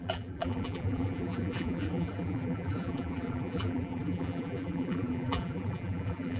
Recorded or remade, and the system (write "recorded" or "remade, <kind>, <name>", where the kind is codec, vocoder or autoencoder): remade, vocoder, BigVGAN v2